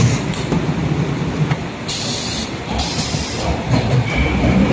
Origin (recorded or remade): remade